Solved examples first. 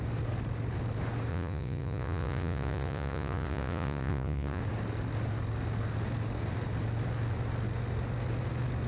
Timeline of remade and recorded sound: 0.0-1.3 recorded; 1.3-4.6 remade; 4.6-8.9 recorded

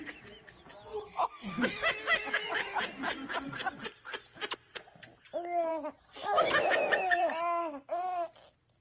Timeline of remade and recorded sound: 0.0-0.9 recorded; 0.9-2.8 remade; 2.8-5.7 recorded; 5.7-7.2 remade; 7.2-8.8 recorded

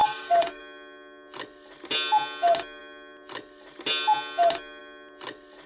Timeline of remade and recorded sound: 0.0-0.6 remade; 0.6-5.7 recorded

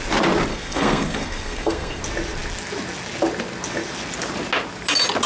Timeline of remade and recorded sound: 0.0-0.5 recorded; 0.5-2.0 remade; 2.0-5.3 recorded

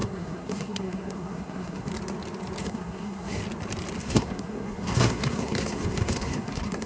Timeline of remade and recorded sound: 0.0-1.9 remade; 1.9-2.6 recorded; 2.6-3.4 remade; 3.4-4.0 recorded; 4.0-6.9 remade

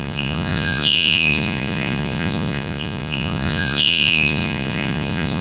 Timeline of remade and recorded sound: 0.0-5.4 remade

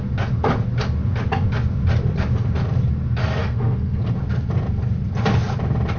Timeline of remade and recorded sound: 0.0-3.4 recorded; 3.4-4.0 remade; 4.0-6.0 recorded

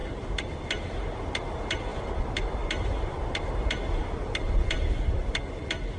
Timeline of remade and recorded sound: 0.0-6.0 recorded